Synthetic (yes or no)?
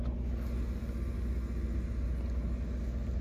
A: no